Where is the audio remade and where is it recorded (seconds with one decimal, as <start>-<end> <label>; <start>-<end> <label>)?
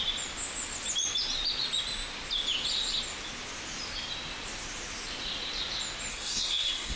0.0-6.1 recorded; 6.1-7.0 remade